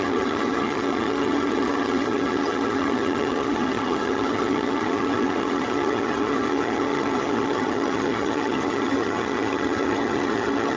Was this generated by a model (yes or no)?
yes